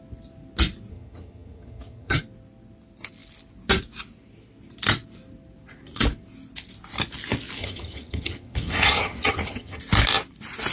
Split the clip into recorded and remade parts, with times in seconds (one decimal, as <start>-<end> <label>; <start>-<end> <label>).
0.0-0.9 recorded; 0.9-2.2 remade; 2.2-7.6 recorded; 7.6-9.8 remade; 9.8-10.7 recorded